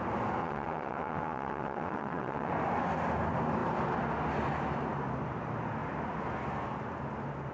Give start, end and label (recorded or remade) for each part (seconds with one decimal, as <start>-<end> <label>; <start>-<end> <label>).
0.0-0.4 recorded; 0.4-2.5 remade; 2.5-7.5 recorded